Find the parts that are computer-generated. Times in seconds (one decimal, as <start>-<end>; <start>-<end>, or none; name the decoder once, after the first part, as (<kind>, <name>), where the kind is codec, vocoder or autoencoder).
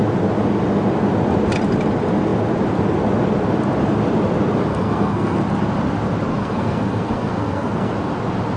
4.7-5.4 (codec, SNAC); 6.4-7.9